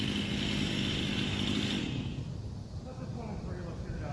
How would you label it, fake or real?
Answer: real